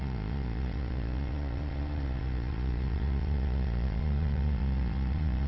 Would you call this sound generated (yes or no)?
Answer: yes